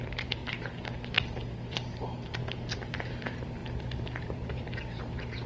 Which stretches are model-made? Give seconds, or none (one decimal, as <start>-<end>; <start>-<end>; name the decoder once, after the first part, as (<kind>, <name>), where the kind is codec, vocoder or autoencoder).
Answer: 0.0-0.4 (vocoder, BigVGAN v2); 1.2-2.4; 3.1-5.5